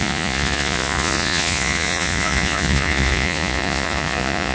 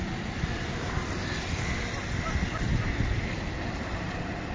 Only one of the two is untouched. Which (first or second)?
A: second